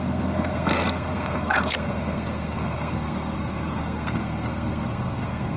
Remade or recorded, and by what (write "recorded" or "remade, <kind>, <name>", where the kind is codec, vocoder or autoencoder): remade, codec, SNAC